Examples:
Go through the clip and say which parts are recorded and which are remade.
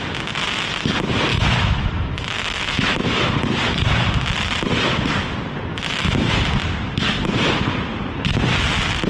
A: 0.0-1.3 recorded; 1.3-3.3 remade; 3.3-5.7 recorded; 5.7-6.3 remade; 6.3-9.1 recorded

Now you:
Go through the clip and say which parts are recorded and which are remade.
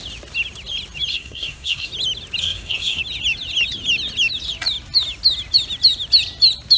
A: 0.0-1.1 recorded; 1.1-1.9 remade; 1.9-2.4 recorded; 2.4-3.0 remade; 3.0-6.8 recorded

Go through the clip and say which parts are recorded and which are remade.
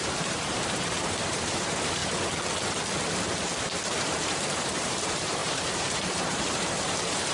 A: 0.0-2.0 remade; 2.0-3.9 recorded; 3.9-7.3 remade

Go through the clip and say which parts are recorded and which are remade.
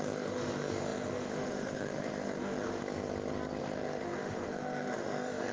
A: 0.0-2.8 remade; 2.8-3.6 recorded; 3.6-5.5 remade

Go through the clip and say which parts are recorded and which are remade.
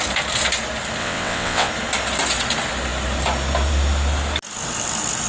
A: 0.0-1.0 recorded; 1.0-1.7 remade; 1.7-5.3 recorded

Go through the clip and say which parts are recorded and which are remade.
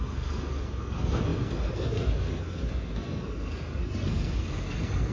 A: 0.0-5.1 remade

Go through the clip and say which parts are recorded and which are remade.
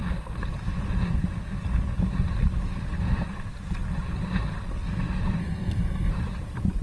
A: 0.0-5.4 recorded; 5.4-6.1 remade; 6.1-6.8 recorded